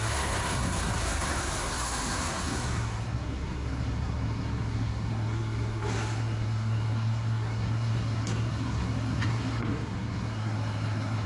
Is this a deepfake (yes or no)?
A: yes